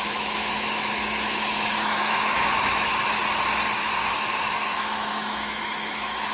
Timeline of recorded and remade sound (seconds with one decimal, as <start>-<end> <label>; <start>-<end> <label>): 0.0-3.2 remade; 3.2-4.1 recorded; 4.1-6.3 remade